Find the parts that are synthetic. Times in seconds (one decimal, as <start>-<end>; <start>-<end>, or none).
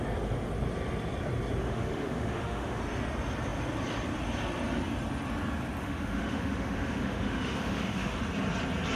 1.6-2.8; 5.8-8.2